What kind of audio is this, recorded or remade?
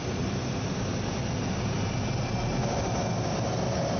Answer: recorded